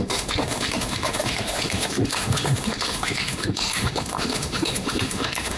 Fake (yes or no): yes